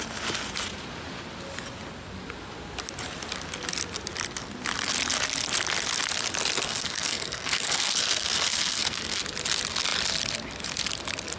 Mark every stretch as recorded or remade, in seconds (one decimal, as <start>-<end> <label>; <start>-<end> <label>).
0.0-6.6 recorded; 6.6-9.2 remade; 9.2-11.4 recorded